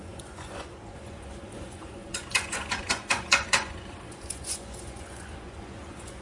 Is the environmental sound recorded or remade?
remade